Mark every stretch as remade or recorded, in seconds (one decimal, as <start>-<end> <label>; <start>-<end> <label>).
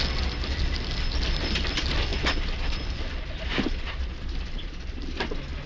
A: 0.0-5.7 recorded